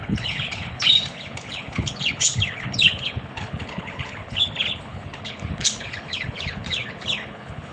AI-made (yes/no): yes